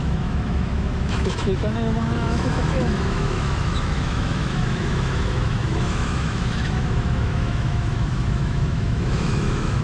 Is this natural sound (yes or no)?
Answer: no